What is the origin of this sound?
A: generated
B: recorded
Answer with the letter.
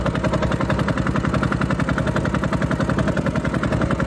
B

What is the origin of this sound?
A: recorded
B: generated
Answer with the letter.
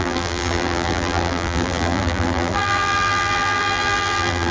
B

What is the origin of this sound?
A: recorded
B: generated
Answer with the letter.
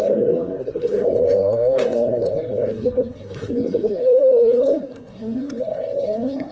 B